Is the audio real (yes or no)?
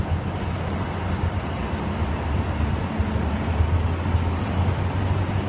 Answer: yes